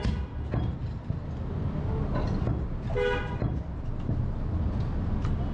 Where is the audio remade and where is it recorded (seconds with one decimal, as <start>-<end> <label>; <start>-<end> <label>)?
0.0-5.5 recorded